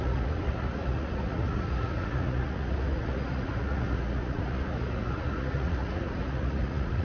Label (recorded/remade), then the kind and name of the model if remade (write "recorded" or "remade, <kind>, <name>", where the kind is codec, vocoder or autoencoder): remade, vocoder, Vocos